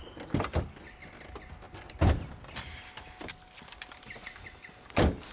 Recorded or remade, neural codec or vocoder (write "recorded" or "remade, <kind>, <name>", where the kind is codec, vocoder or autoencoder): recorded